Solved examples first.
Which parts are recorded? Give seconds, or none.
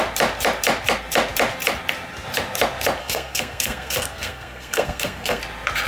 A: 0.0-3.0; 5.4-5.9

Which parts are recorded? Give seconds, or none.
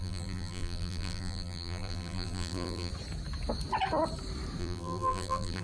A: 2.9-4.6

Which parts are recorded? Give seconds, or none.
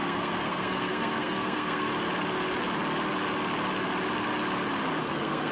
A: 1.9-5.0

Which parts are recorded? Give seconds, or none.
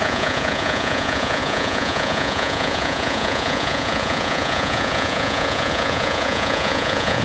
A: none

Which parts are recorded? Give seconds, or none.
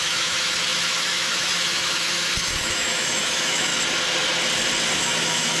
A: 3.7-4.9